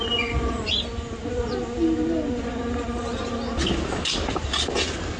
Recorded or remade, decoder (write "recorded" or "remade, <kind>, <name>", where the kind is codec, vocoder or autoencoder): recorded